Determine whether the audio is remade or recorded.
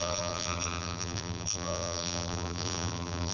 remade